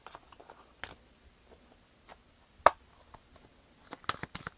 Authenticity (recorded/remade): recorded